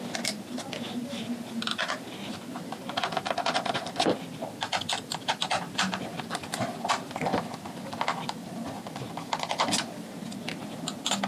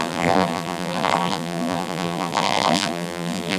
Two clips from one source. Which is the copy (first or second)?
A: second